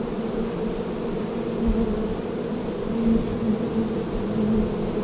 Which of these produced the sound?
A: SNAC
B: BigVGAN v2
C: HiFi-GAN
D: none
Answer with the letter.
D